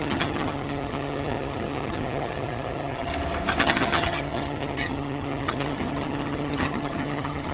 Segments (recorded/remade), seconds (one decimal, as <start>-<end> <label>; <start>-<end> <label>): 0.0-3.1 remade; 3.1-3.6 recorded; 3.6-7.5 remade